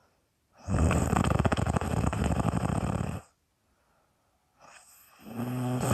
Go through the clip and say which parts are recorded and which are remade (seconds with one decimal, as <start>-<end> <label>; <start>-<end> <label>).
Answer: 0.0-3.2 remade; 3.2-5.9 recorded